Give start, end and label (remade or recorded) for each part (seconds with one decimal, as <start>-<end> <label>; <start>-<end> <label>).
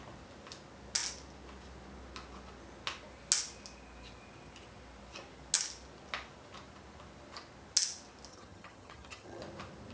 0.0-8.3 recorded; 8.3-9.4 remade; 9.4-9.9 recorded